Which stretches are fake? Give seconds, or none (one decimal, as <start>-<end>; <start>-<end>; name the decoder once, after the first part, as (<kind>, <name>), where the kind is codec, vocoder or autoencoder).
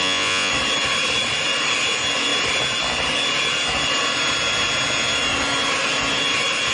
0.0-0.5 (vocoder, Vocos)